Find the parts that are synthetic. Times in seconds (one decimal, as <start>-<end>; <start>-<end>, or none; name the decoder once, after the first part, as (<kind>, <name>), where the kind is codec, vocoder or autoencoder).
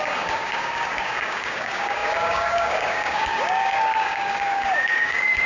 0.0-5.5 (codec, DAC)